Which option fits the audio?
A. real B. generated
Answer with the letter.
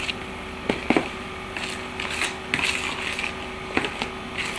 A